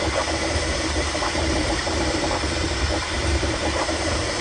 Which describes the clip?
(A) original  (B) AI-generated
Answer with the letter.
B